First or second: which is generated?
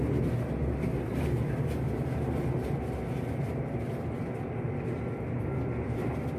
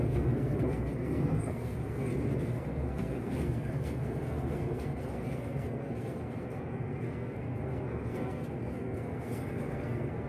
second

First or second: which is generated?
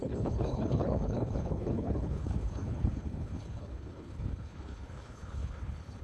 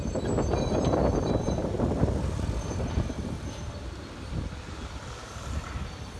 first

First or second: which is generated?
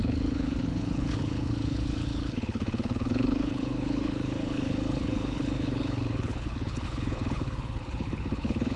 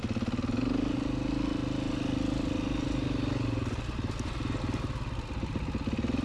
first